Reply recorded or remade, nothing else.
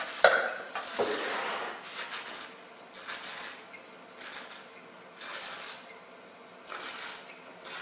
recorded